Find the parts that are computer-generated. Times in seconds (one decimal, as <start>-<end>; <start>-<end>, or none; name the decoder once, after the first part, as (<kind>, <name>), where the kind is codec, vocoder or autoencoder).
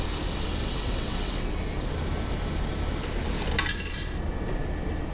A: 0.6-1.5 (vocoder, WaveNeXt)